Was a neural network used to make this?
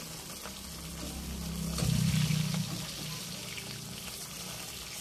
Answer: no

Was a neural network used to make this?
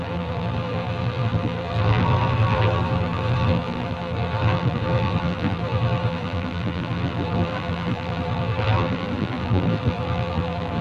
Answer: yes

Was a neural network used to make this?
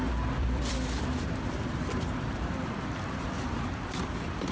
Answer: yes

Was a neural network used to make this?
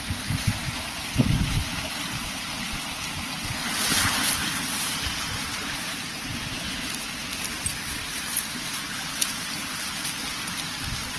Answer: no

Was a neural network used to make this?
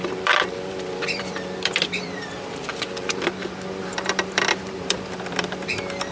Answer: yes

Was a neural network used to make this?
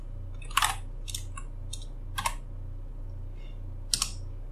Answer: no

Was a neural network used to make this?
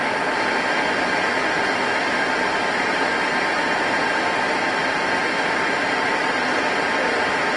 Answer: no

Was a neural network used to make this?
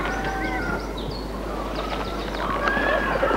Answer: yes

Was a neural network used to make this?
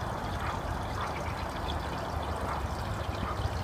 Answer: no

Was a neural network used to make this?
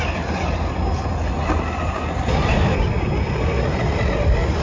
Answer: no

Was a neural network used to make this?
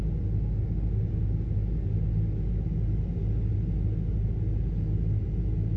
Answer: no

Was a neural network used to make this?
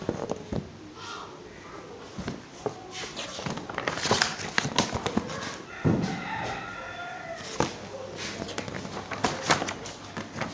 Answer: no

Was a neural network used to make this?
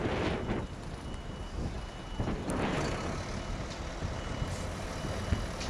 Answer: no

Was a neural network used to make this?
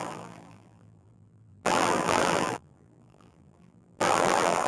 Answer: yes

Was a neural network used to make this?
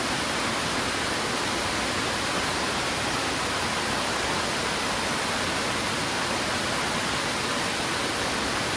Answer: no